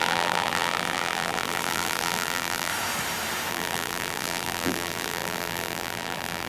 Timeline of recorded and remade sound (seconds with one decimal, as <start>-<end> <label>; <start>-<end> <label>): 0.0-2.7 remade; 2.7-3.5 recorded; 3.5-6.5 remade